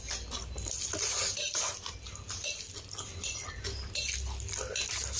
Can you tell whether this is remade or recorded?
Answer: recorded